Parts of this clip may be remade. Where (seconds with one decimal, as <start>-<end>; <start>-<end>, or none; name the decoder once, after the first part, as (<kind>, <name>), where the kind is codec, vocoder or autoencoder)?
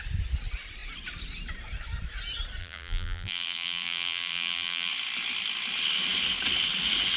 2.6-4.9 (vocoder, BigVGAN v2)